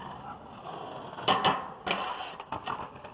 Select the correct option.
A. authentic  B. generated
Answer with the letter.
A